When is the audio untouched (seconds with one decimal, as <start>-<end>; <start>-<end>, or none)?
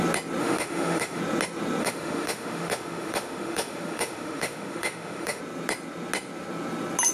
0.0-0.4; 1.2-1.8; 5.4-7.1